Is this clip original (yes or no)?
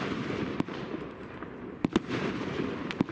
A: no